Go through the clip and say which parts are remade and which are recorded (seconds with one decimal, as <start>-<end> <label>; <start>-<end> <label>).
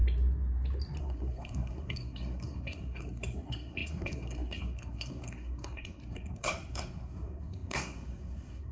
0.0-1.0 recorded; 1.0-8.7 remade